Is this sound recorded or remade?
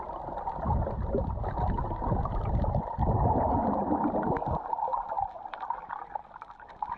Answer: recorded